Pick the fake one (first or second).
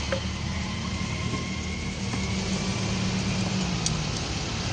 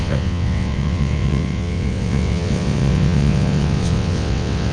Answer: second